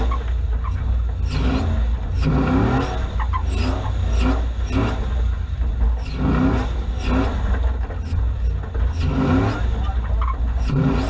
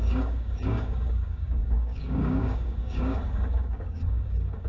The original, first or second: first